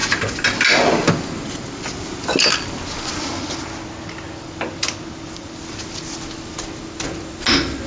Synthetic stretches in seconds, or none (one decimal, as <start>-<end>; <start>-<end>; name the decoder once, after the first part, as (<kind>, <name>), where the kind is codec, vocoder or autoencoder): none